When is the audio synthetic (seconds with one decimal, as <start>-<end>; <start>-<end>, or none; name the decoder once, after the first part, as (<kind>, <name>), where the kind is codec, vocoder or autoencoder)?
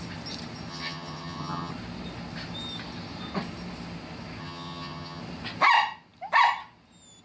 0.7-1.7 (vocoder, HiFi-GAN); 4.4-5.2